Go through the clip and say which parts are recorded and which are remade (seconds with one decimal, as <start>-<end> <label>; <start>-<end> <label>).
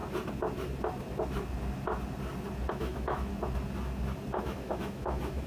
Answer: 0.0-2.7 recorded; 2.7-3.3 remade; 3.3-4.4 recorded; 4.4-5.5 remade